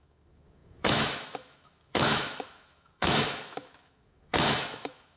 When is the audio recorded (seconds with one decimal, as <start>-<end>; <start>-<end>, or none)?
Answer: none